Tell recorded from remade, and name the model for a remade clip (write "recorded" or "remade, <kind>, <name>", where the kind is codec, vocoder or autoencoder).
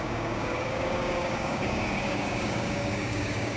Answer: remade, codec, DAC